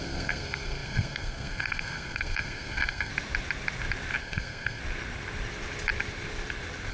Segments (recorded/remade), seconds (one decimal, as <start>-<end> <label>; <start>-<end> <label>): 0.0-3.1 remade; 3.1-4.2 recorded; 4.2-4.8 remade; 4.8-6.9 recorded